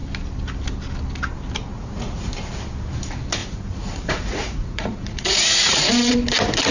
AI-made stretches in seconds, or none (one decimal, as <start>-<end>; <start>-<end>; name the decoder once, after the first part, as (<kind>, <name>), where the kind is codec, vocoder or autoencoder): 1.7-2.3 (vocoder, Vocos); 3.4-5.9